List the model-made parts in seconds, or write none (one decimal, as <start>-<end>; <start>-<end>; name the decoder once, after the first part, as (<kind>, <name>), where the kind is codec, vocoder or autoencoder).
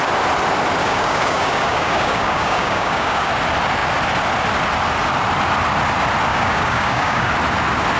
0.8-3.3 (codec, DAC); 6.3-7.3